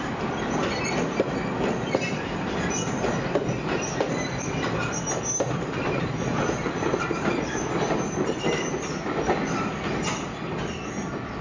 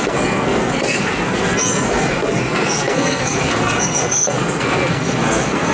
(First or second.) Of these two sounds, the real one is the first